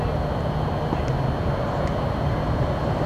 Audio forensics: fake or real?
real